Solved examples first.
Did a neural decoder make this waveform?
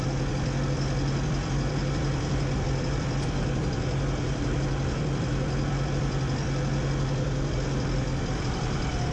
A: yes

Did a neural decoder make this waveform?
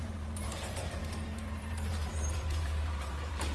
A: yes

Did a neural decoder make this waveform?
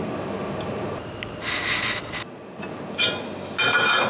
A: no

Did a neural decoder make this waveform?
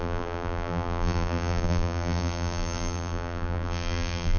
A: yes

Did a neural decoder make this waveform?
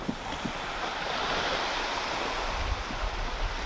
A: yes